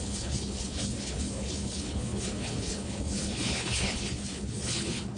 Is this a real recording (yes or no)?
no